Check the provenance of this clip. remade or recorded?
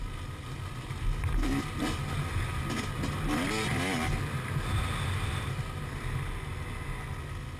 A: recorded